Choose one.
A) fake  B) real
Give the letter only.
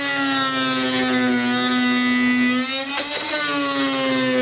B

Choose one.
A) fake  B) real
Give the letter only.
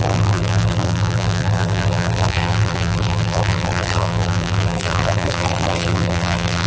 A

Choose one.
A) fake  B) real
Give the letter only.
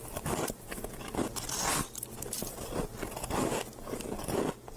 B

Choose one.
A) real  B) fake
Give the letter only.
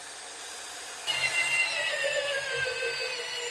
A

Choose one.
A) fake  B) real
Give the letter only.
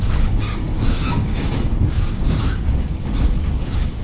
A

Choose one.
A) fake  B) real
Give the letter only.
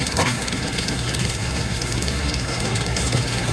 A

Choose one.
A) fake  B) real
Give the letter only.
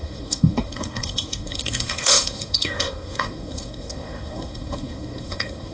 A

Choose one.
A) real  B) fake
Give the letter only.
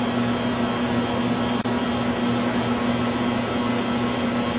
A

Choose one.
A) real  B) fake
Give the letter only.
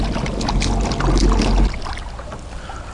A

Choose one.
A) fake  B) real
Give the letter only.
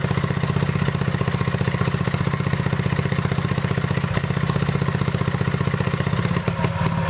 B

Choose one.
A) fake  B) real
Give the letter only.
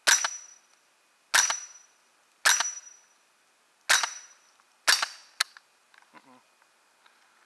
B